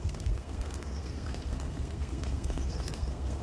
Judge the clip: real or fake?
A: fake